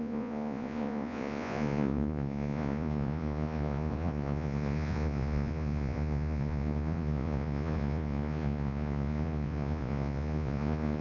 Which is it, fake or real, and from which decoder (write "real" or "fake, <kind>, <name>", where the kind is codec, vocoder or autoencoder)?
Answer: fake, vocoder, Vocos